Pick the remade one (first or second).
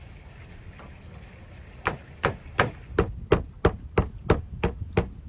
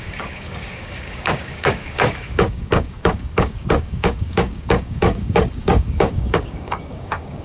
second